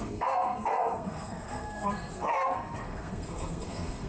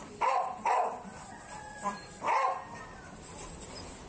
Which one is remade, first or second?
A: first